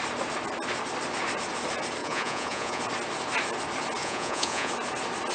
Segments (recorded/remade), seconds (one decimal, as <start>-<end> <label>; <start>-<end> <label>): 0.0-2.0 recorded; 2.0-2.8 remade; 2.8-4.0 recorded; 4.0-4.7 remade; 4.7-5.3 recorded